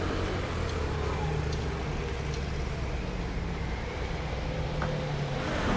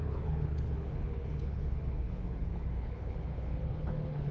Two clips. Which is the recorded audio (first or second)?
first